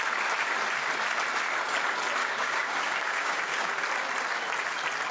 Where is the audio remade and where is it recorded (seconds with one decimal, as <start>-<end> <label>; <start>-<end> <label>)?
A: 0.0-2.2 recorded; 2.2-3.7 remade; 3.7-5.1 recorded